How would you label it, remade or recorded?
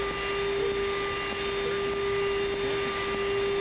recorded